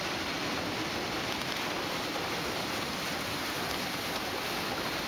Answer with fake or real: fake